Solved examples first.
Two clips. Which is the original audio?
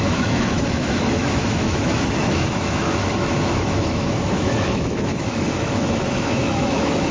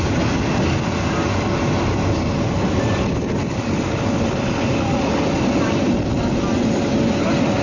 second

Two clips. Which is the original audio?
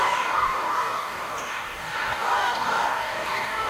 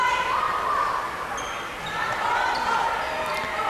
second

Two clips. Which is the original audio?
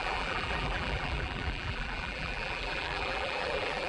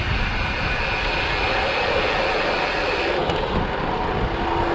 second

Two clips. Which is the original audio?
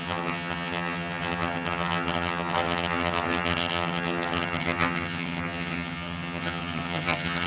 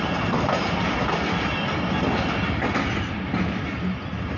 second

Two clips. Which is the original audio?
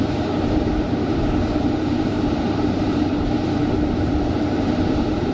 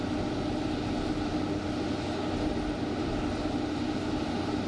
second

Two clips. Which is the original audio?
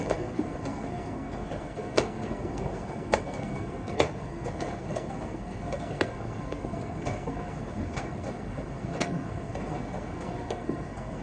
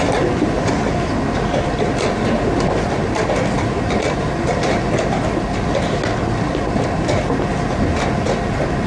second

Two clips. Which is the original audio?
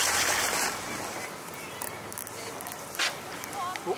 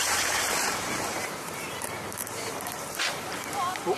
first